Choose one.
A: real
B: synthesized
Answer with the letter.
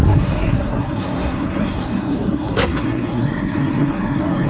B